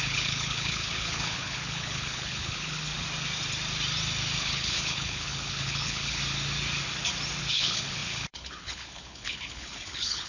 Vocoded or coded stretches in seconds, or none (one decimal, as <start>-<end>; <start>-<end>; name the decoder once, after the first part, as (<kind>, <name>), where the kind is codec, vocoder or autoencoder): 0.0-2.9 (codec, HILCodec); 4.4-6.2; 7.4-10.3